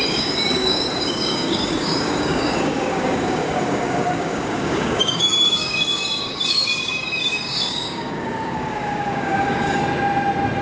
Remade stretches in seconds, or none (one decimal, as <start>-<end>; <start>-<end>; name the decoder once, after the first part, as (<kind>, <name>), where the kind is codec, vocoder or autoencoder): 0.0-9.8 (codec, DAC)